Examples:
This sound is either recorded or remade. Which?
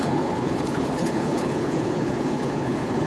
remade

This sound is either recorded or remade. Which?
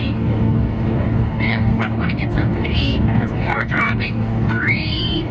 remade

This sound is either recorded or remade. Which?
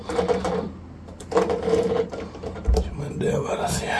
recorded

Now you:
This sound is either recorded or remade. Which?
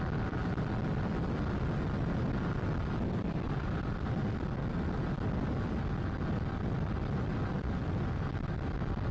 recorded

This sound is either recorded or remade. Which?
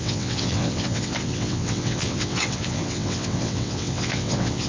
remade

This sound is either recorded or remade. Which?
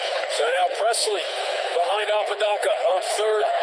remade